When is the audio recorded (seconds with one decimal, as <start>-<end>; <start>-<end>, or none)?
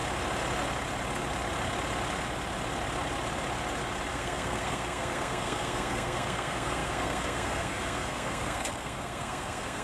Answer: 0.0-4.1